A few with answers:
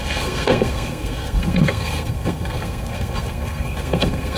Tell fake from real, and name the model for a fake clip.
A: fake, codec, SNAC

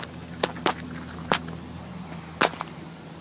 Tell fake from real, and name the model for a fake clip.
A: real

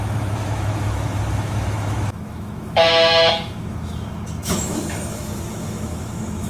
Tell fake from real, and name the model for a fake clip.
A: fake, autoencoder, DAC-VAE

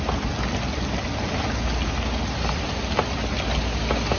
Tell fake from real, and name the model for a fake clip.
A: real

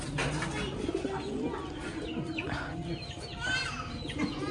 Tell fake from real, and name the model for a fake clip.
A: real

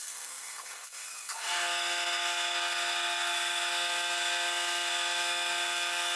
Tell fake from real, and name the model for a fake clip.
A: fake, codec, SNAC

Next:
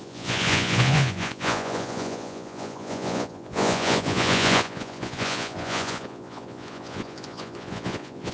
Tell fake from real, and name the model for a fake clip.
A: fake, vocoder, Vocos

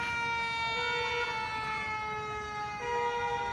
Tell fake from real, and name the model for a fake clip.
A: real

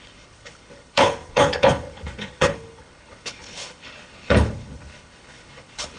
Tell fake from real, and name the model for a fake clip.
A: fake, codec, HILCodec